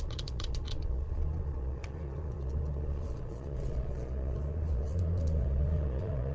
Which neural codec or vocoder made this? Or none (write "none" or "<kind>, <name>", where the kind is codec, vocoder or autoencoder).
vocoder, Vocos